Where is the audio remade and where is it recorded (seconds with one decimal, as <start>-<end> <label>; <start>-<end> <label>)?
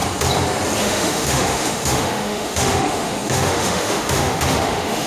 0.0-0.8 recorded; 0.8-5.1 remade